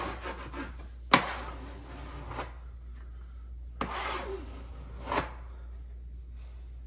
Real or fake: real